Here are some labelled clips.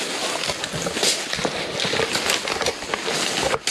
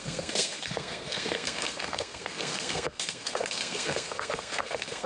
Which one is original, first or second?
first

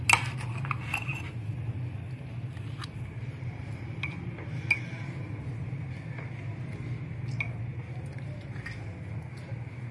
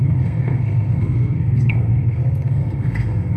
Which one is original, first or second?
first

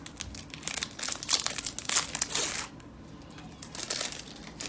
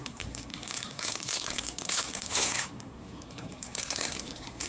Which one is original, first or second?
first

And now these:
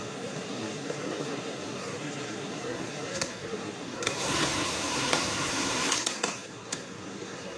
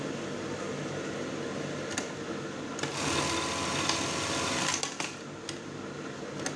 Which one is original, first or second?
second